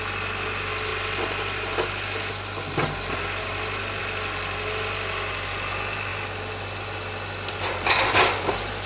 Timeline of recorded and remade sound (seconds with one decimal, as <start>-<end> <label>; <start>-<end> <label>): 0.0-8.9 recorded